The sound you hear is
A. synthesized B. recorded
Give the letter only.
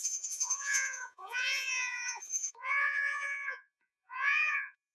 A